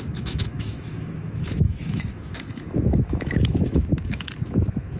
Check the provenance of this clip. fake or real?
fake